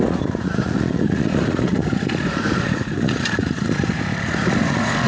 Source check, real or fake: fake